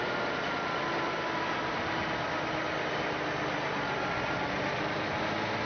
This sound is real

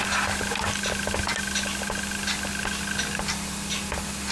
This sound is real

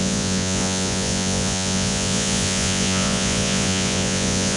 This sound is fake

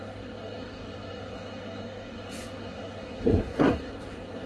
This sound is fake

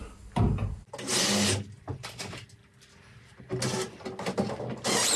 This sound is real